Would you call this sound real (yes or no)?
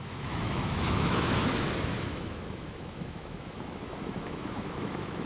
no